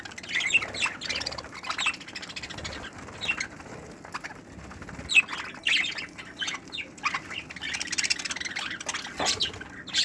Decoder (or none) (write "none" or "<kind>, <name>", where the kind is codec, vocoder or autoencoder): none